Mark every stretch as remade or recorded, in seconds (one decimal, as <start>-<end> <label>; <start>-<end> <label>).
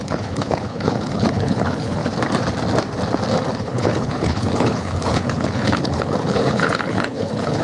0.0-2.0 remade; 2.0-3.5 recorded; 3.5-7.6 remade